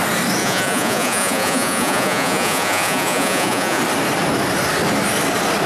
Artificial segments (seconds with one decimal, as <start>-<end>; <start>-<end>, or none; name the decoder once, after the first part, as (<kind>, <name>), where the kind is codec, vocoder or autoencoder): 0.4-3.8 (vocoder, Vocos)